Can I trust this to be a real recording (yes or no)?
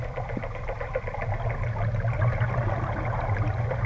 yes